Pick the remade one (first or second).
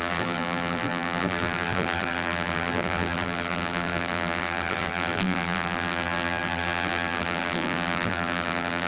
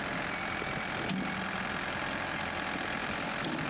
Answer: first